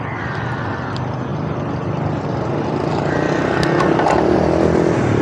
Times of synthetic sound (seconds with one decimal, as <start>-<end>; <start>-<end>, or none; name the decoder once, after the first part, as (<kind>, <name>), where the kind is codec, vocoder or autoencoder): none